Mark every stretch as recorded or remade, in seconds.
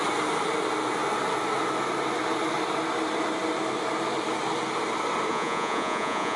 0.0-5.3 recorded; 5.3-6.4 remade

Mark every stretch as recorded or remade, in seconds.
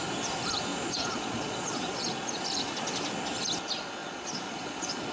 0.0-0.7 recorded; 0.7-2.4 remade; 2.4-4.0 recorded; 4.0-5.1 remade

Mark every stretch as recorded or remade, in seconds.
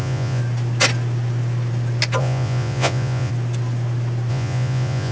0.0-0.4 remade; 0.4-2.2 recorded; 2.2-3.3 remade; 3.3-4.3 recorded; 4.3-5.1 remade